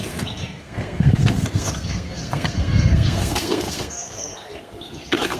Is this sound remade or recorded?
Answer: remade